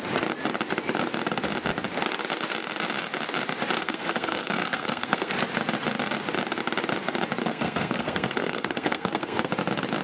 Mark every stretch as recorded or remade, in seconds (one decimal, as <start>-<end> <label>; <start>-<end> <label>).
0.0-3.8 recorded; 3.8-5.3 remade; 5.3-7.4 recorded; 7.4-9.5 remade; 9.5-10.0 recorded